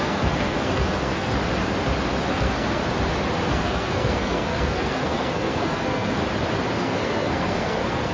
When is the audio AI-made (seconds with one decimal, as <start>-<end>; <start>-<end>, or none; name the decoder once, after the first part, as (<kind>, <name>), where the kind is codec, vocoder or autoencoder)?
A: 0.0-1.4 (codec, SNAC); 2.3-2.8; 3.5-6.2; 6.7-8.1